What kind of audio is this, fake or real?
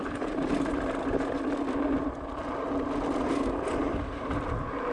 real